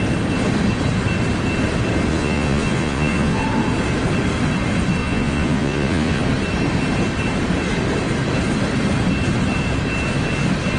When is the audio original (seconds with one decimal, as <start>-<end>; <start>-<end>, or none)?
0.0-2.1; 3.4-5.0; 6.2-10.8